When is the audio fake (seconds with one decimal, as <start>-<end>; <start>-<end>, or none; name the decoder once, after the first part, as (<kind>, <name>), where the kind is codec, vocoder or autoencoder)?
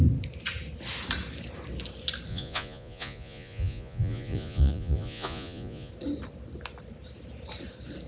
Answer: 2.3-5.9 (vocoder, Vocos)